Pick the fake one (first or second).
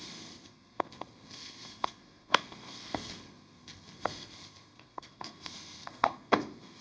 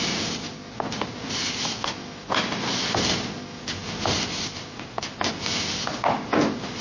first